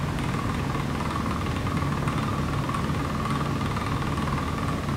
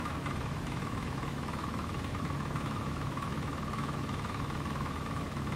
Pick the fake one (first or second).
second